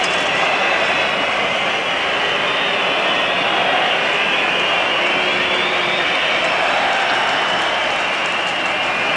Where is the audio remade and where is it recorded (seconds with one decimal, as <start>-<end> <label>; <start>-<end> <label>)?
0.0-9.2 recorded